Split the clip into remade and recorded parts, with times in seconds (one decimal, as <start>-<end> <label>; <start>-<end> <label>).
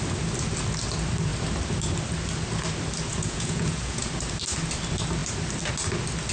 0.0-3.1 recorded; 3.1-4.1 remade; 4.1-6.3 recorded